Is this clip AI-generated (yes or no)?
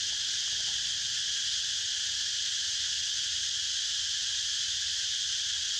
no